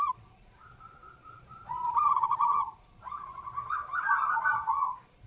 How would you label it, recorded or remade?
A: remade